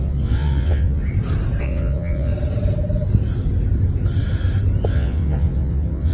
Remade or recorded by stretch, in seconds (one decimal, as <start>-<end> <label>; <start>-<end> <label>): 0.0-1.0 remade; 1.0-1.6 recorded; 1.6-2.3 remade; 2.3-4.9 recorded; 4.9-6.1 remade